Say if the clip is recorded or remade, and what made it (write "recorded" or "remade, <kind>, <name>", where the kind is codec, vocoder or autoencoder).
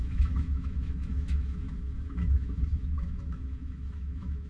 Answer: remade, autoencoder, DAC-VAE